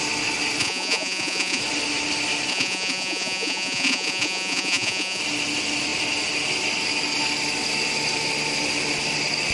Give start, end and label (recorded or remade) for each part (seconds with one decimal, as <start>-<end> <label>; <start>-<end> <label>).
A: 0.0-0.6 recorded; 0.6-1.6 remade; 1.6-2.5 recorded; 2.5-5.2 remade; 5.2-9.5 recorded